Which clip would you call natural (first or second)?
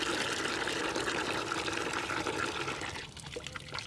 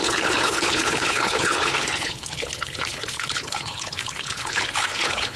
first